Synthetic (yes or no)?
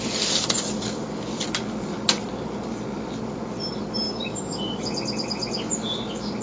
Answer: no